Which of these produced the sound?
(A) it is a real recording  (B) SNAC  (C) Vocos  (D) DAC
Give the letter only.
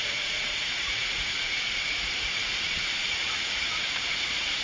C